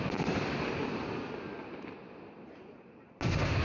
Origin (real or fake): real